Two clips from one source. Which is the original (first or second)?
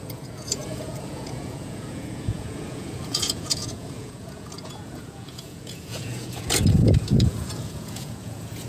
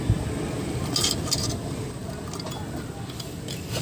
second